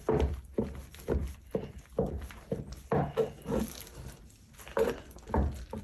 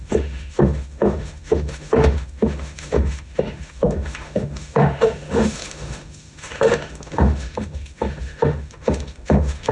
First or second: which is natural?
first